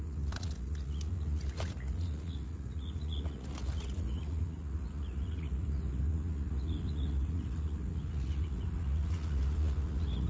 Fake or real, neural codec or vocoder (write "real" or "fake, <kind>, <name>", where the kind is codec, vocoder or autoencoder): fake, vocoder, Vocos